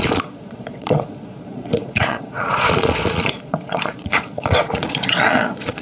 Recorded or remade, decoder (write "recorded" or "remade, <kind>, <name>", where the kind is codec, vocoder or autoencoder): remade, vocoder, Vocos